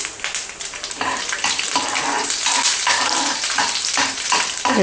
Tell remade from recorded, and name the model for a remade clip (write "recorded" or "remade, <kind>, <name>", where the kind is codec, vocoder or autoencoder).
recorded